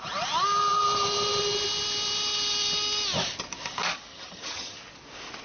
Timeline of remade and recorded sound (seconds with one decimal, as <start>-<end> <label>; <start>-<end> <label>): 0.0-4.1 recorded; 4.1-4.8 remade; 4.8-5.4 recorded